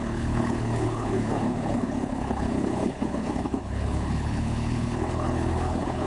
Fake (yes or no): yes